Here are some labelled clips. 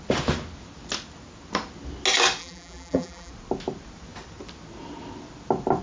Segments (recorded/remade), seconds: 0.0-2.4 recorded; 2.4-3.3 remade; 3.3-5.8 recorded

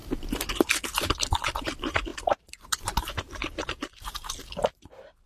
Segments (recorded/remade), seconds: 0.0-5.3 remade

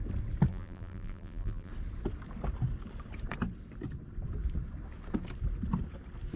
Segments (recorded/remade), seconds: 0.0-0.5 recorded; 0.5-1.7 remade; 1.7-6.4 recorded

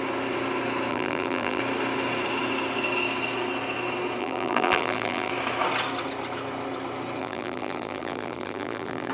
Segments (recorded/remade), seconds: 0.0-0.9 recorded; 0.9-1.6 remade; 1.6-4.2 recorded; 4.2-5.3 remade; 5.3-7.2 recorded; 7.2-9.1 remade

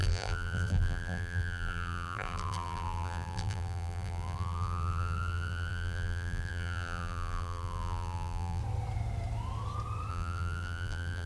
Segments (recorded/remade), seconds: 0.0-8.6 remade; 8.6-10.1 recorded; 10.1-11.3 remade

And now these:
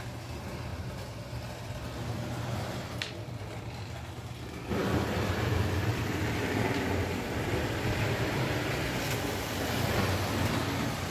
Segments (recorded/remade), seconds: 0.0-0.7 recorded; 0.7-1.2 remade; 1.2-4.8 recorded; 4.8-6.2 remade; 6.2-11.1 recorded